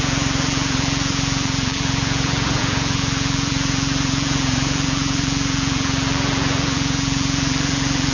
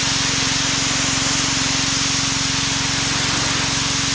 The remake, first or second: first